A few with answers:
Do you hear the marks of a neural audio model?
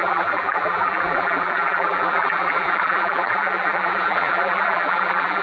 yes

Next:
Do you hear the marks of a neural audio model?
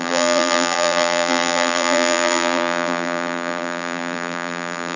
yes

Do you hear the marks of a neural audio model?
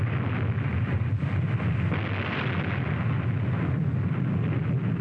no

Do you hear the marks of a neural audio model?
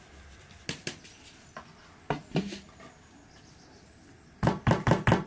no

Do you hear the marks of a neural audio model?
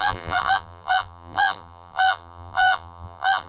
yes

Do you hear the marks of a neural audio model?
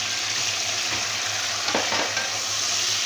no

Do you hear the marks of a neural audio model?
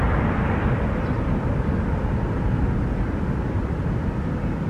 no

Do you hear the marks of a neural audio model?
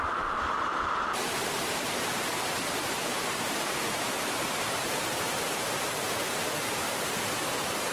yes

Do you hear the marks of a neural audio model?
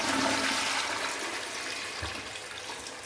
no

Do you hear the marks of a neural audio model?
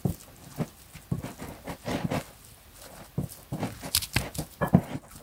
no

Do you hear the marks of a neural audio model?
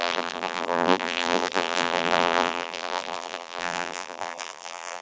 yes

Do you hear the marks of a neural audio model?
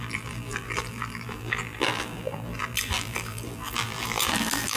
yes